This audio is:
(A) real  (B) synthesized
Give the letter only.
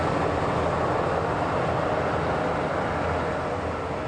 A